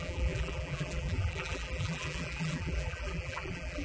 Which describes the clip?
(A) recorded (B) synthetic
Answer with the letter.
B